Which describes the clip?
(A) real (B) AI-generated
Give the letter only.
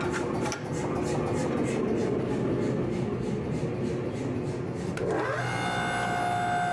A